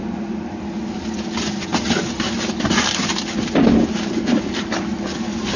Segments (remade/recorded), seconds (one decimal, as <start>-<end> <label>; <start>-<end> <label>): 0.0-5.6 recorded